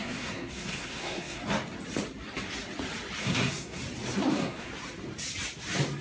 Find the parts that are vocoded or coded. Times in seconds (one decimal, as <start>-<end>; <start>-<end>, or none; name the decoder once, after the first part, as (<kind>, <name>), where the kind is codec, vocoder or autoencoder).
0.0-1.4 (codec, SNAC); 3.2-3.8; 4.3-4.7